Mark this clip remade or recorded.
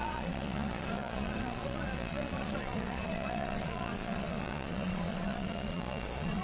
remade